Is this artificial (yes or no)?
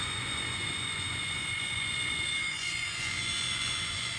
yes